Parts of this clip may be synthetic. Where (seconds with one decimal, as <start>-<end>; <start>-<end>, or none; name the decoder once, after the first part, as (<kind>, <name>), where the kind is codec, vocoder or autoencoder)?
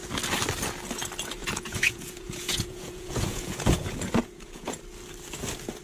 1.4-4.8 (vocoder, Vocos)